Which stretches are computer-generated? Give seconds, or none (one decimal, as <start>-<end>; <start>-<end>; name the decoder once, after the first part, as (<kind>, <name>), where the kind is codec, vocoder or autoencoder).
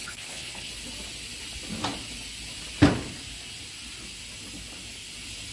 0.0-0.7 (codec, HILCodec)